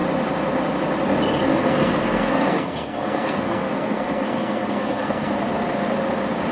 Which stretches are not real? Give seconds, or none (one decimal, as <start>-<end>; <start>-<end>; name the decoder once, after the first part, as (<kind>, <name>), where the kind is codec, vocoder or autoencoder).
1.5-5.4 (codec, SNAC)